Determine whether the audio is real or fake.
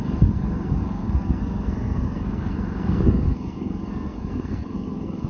fake